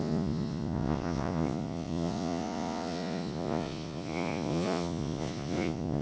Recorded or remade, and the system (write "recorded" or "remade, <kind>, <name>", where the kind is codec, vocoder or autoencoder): remade, vocoder, Vocos